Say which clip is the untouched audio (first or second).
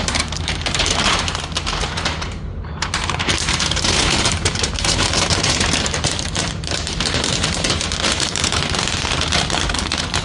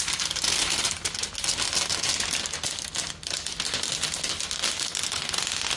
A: second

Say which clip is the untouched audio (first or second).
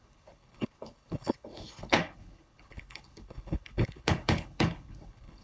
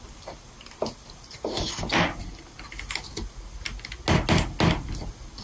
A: second